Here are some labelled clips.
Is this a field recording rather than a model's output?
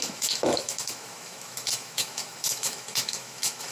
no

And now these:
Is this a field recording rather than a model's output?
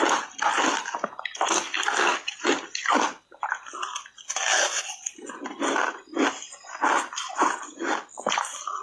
yes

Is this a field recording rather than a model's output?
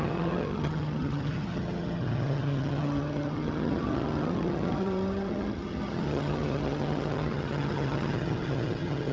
no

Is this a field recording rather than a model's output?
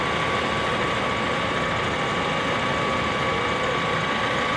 yes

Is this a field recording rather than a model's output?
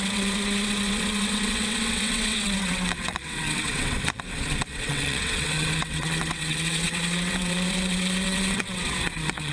no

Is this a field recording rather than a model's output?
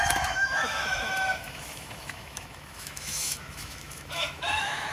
no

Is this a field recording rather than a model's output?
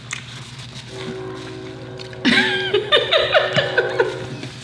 yes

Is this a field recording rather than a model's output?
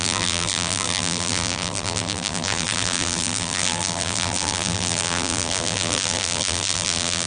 no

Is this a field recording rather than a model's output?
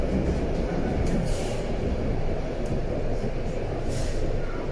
yes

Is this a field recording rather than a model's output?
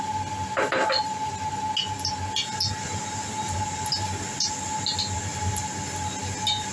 yes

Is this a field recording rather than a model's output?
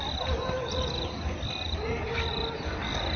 yes